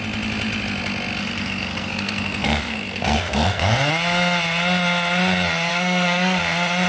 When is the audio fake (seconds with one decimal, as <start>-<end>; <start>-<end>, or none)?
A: 1.2-3.9; 5.7-6.4